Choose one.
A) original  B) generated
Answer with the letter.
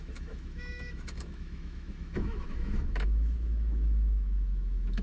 B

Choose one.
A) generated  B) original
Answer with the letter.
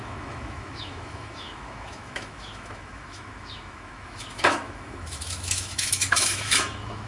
A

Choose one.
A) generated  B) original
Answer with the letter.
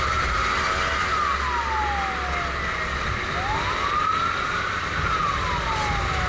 B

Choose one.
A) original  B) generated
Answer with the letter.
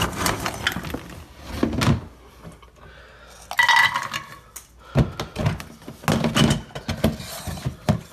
A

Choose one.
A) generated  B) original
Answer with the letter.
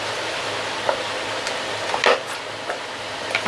B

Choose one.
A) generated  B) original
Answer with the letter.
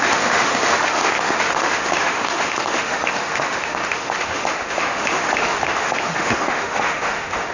A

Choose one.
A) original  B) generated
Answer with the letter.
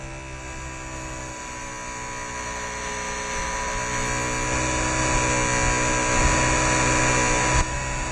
A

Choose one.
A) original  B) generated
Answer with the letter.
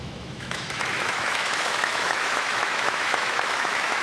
B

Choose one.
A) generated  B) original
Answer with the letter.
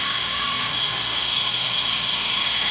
A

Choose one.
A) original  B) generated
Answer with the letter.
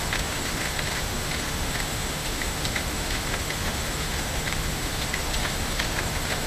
B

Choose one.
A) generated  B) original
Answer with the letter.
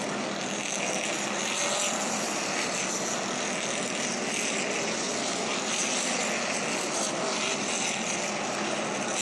B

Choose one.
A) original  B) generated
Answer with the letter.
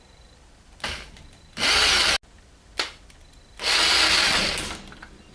A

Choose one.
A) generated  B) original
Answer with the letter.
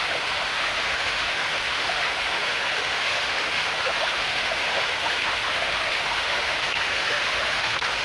A